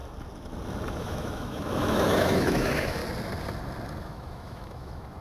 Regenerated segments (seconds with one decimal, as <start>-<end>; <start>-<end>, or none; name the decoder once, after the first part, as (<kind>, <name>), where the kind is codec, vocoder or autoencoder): 0.9-3.0 (autoencoder, DAC-VAE); 4.0-5.2